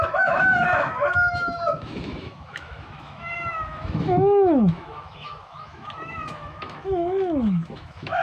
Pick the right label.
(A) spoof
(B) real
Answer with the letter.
A